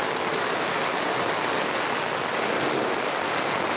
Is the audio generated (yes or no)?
no